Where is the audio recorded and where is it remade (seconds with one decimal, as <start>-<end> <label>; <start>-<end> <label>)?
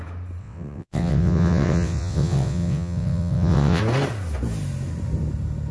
0.0-0.4 recorded; 0.4-3.8 remade; 3.8-5.7 recorded